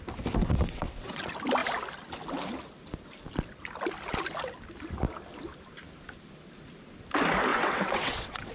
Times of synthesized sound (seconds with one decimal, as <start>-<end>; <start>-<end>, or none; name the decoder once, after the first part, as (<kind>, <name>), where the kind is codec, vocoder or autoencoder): 0.4-1.2 (vocoder, WaveNeXt); 7.5-8.5